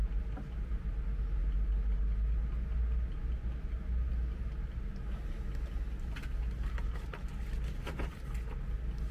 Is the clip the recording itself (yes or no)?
yes